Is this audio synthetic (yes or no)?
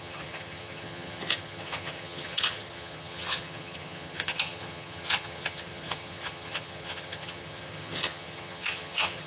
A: yes